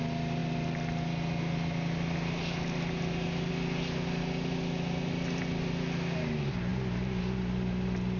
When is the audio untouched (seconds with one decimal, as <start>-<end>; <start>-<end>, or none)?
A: 0.0-8.2